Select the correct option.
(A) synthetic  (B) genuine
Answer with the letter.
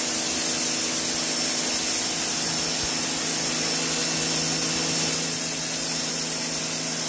B